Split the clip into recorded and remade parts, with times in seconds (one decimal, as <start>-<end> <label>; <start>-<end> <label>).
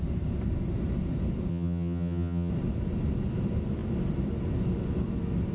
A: 0.0-1.5 recorded; 1.5-2.5 remade; 2.5-5.5 recorded